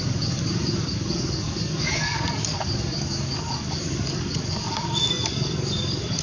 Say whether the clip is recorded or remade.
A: remade